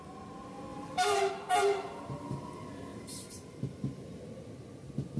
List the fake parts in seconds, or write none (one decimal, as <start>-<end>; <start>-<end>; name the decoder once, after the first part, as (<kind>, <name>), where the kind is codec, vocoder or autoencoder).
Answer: 0.7-1.3 (vocoder, BigVGAN v2); 2.9-4.2